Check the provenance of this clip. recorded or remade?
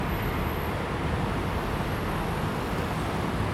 recorded